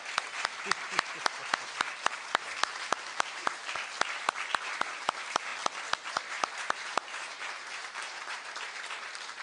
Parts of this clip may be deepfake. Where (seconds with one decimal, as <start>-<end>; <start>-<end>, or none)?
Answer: 0.0-3.6; 4.5-5.5; 6.1-9.4